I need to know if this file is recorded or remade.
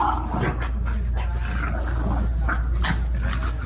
recorded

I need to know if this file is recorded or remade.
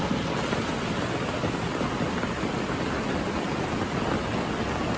recorded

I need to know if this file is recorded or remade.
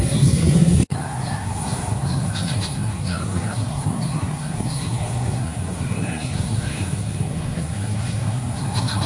remade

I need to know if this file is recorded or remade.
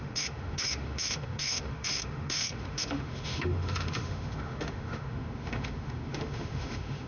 remade